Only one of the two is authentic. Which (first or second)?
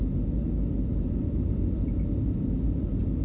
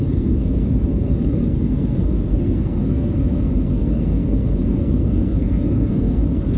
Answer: first